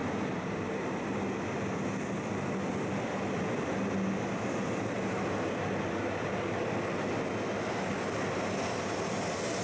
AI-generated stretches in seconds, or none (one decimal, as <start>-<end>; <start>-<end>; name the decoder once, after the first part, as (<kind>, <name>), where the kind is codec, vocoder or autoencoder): none